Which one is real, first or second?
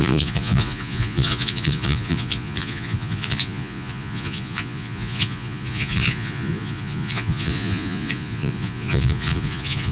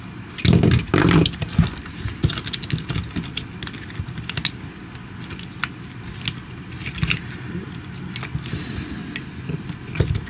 second